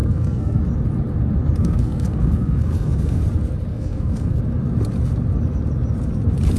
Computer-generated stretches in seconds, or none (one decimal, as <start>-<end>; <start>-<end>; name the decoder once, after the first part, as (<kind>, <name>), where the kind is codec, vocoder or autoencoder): 0.0-0.6 (codec, SNAC); 1.6-3.2; 3.7-4.4